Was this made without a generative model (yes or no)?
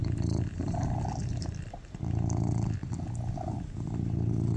yes